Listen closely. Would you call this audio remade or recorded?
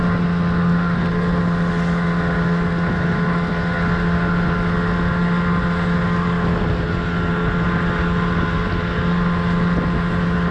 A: recorded